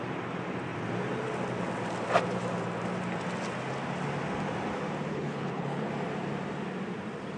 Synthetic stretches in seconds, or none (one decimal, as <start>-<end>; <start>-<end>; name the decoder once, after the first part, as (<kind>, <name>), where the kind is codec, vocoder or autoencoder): 5.1-5.9 (codec, HILCodec)